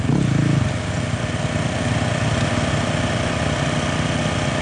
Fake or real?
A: real